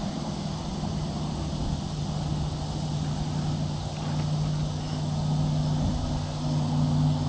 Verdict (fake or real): real